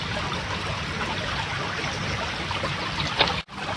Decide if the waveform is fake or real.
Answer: real